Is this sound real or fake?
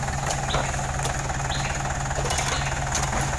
real